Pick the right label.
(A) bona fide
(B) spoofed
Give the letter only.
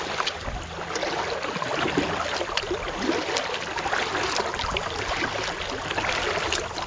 A